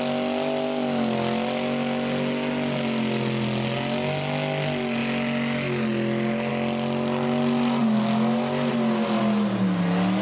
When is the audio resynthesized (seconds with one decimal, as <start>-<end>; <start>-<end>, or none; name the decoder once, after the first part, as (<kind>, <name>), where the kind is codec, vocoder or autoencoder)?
none